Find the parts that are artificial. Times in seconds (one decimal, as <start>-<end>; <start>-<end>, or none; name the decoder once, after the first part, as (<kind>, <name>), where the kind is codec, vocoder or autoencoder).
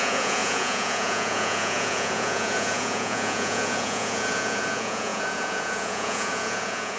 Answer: 0.0-7.0 (vocoder, Vocos)